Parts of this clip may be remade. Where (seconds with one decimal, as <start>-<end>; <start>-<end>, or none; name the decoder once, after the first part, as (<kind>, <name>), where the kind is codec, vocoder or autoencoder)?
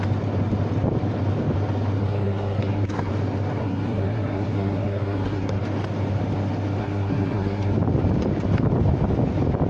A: 2.0-3.1 (codec, SNAC); 3.6-5.6; 6.8-7.7